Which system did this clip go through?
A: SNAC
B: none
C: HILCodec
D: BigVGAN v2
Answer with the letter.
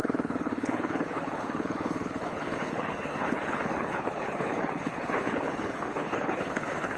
C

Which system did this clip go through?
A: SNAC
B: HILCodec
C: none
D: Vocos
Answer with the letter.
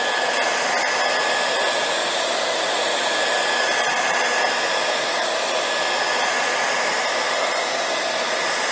C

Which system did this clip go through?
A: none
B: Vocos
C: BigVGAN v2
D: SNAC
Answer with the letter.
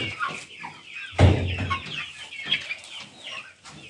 A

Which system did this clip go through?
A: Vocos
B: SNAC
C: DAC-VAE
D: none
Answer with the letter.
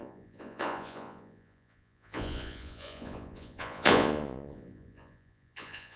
A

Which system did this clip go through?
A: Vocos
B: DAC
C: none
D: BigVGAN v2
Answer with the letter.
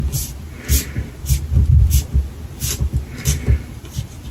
C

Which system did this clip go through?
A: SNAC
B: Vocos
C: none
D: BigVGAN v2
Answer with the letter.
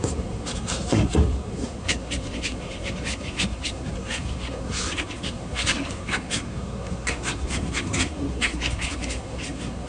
A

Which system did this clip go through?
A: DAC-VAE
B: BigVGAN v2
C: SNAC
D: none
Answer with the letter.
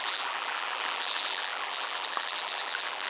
B